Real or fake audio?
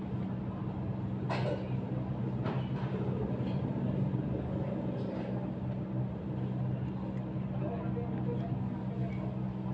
real